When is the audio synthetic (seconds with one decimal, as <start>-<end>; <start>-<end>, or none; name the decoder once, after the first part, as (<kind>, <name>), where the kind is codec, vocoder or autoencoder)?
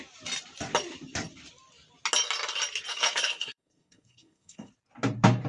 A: 2.9-4.7 (codec, SNAC)